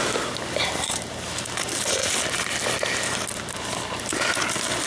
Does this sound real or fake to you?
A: real